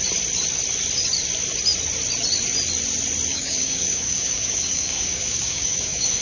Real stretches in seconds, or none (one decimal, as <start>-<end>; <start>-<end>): 0.0-3.3